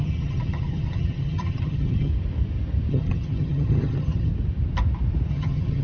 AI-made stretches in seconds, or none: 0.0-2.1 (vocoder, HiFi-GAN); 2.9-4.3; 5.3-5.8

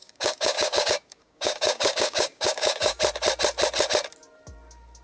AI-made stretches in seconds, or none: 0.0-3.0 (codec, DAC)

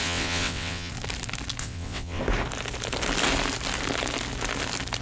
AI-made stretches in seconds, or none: 0.0-0.9 (vocoder, WaveNeXt); 1.6-2.2